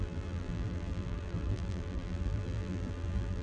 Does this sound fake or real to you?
fake